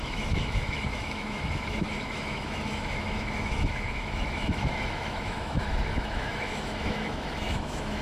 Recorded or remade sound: remade